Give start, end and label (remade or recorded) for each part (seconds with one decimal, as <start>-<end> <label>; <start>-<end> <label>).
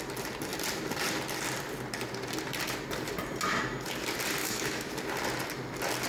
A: 0.0-4.4 recorded; 4.4-4.9 remade; 4.9-6.1 recorded